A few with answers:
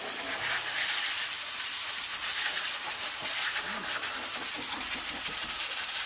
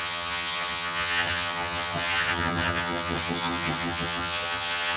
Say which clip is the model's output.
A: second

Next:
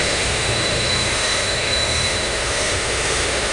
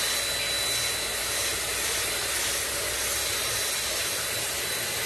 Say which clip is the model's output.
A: first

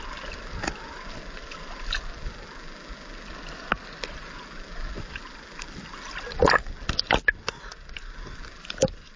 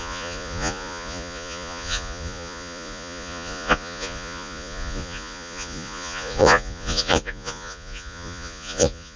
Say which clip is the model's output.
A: second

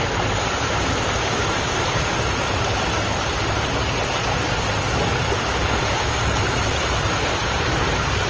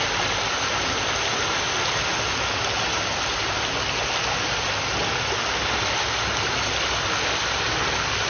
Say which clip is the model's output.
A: first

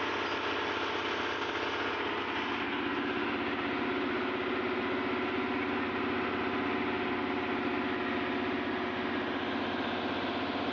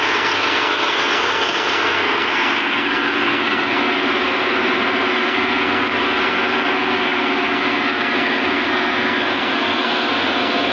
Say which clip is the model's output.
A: second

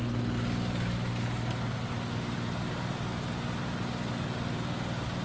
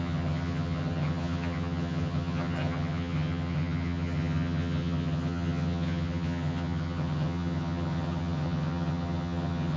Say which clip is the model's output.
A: second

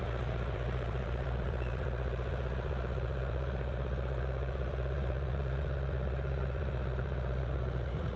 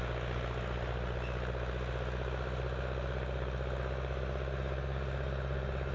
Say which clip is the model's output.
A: first